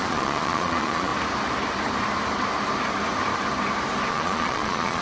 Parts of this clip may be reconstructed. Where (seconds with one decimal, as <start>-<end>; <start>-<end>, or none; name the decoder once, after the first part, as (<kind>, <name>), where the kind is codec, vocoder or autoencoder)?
0.0-1.1 (vocoder, Vocos); 4.1-5.0